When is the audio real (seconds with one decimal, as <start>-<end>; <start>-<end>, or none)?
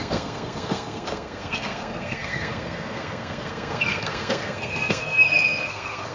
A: none